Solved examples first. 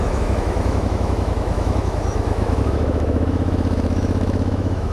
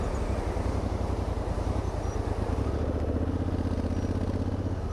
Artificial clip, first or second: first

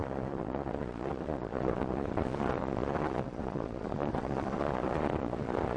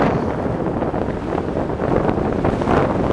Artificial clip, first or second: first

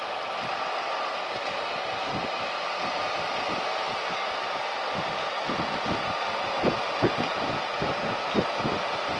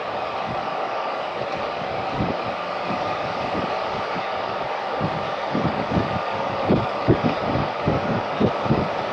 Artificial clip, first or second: second